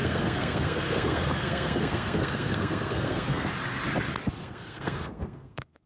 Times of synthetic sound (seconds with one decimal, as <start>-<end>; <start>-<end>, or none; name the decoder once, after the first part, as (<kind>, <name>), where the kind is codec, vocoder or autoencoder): 0.0-3.5 (codec, SNAC); 4.4-5.9